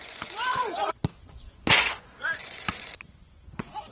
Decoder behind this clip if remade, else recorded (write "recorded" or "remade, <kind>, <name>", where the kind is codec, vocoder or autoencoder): remade, vocoder, Vocos